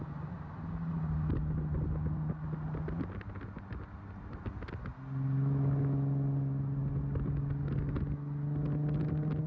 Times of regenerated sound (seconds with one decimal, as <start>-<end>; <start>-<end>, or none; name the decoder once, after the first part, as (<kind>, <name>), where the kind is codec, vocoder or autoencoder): none